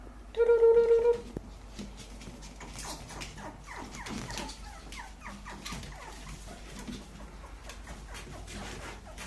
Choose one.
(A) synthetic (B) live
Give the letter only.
B